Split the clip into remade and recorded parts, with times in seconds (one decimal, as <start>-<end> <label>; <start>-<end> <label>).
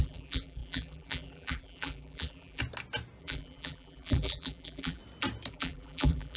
0.0-2.6 remade; 2.6-3.2 recorded; 3.2-5.0 remade; 5.0-5.5 recorded; 5.5-6.4 remade